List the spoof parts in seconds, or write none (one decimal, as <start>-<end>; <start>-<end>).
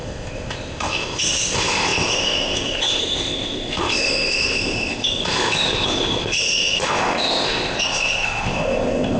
0.0-9.2